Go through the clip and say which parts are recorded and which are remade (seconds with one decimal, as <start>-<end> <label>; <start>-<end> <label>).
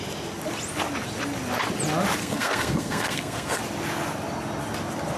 0.0-2.2 recorded; 2.2-3.6 remade; 3.6-5.2 recorded